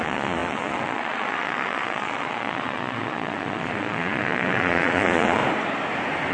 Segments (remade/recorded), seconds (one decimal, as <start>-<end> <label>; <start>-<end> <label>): 0.0-5.4 remade; 5.4-6.3 recorded